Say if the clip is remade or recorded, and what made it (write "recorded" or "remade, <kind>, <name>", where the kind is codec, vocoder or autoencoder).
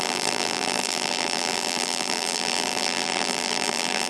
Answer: remade, vocoder, BigVGAN v2